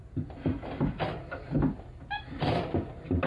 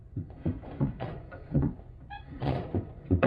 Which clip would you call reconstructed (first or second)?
second